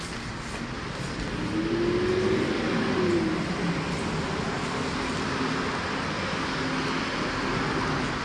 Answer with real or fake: real